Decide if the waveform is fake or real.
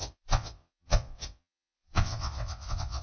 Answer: fake